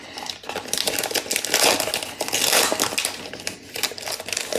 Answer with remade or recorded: recorded